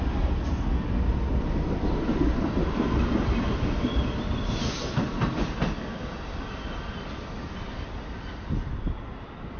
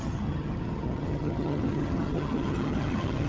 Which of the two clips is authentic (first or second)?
first